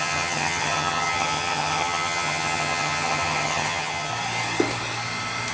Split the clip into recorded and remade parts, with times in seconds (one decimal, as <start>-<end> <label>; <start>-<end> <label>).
0.0-4.1 remade; 4.1-5.5 recorded